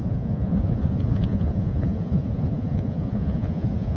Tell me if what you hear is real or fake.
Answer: fake